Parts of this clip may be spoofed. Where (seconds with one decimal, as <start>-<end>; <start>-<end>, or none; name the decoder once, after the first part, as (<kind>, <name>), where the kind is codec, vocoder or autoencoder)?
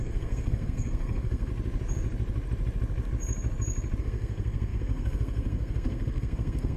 0.0-1.5 (codec, SNAC); 4.0-6.8